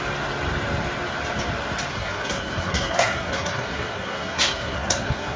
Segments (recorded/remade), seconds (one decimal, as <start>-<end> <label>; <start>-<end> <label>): 0.0-1.9 recorded; 1.9-5.4 remade

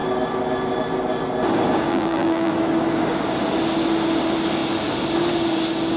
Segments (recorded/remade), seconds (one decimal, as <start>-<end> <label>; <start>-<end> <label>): 0.0-1.9 recorded; 1.9-2.5 remade; 2.5-6.0 recorded

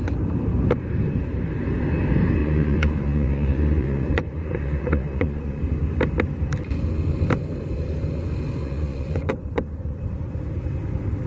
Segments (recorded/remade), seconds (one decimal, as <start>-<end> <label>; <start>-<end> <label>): 0.0-2.4 recorded; 2.4-5.6 remade; 5.6-8.6 recorded; 8.6-10.0 remade; 10.0-11.3 recorded

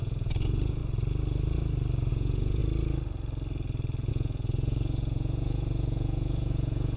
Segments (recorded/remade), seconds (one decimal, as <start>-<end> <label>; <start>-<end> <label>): 0.0-0.8 remade; 0.8-2.1 recorded; 2.1-2.6 remade; 2.6-4.1 recorded; 4.1-7.0 remade

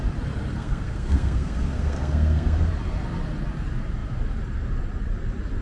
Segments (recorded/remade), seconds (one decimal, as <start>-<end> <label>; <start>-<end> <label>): 0.0-0.5 recorded; 0.5-2.7 remade; 2.7-5.6 recorded

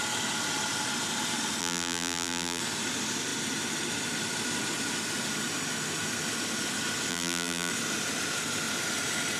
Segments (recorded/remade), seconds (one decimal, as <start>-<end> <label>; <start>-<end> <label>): 0.0-1.6 recorded; 1.6-2.6 remade; 2.6-7.1 recorded; 7.1-7.7 remade; 7.7-9.4 recorded

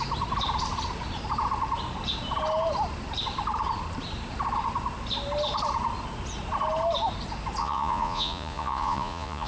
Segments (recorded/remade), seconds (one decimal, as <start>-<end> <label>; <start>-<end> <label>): 0.0-7.6 recorded; 7.6-9.5 remade

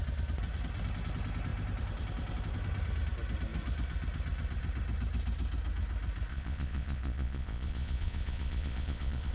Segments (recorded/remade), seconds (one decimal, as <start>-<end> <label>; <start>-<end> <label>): 0.0-6.3 recorded; 6.3-9.3 remade